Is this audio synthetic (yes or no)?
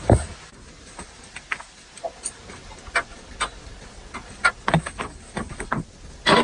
no